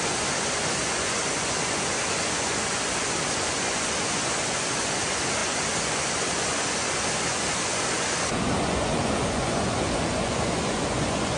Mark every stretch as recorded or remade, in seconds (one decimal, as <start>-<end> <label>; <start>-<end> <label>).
0.0-11.4 remade